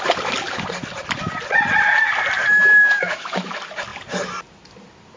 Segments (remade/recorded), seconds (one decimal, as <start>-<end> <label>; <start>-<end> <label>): 0.0-2.4 recorded; 2.4-3.5 remade; 3.5-5.2 recorded